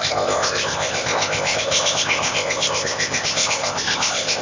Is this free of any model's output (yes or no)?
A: no